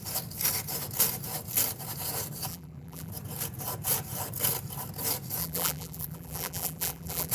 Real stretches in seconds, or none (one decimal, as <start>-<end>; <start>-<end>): 0.0-2.5; 3.1-5.4

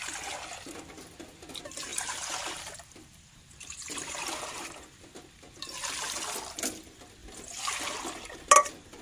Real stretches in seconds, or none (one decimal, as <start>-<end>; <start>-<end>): 0.0-1.9; 5.1-9.0

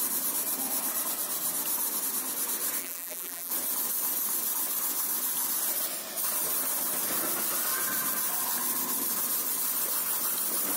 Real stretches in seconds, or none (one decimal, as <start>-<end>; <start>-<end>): 0.0-2.8; 3.5-10.8

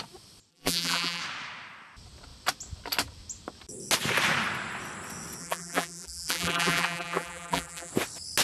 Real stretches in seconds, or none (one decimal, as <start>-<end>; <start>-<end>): 0.0-0.5; 1.2-5.4; 7.9-8.4